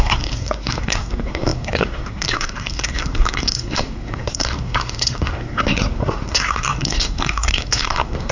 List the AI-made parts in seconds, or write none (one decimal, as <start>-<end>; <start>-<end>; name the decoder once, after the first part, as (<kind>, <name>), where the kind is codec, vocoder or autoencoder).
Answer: 0.0-8.3 (codec, SNAC)